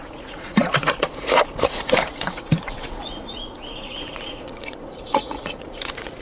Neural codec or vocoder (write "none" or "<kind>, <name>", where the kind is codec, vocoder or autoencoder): vocoder, Vocos